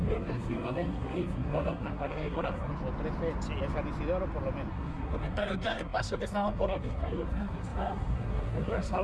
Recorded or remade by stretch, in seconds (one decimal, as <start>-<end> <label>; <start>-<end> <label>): 0.0-2.7 remade; 2.7-4.7 recorded; 4.7-9.0 remade